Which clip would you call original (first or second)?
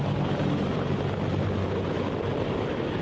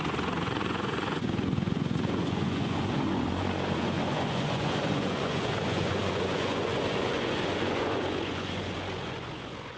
first